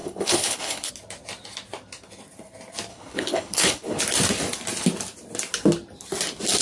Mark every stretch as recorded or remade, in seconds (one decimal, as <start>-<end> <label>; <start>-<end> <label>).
0.0-0.9 remade; 0.9-2.9 recorded; 2.9-4.0 remade; 4.0-6.6 recorded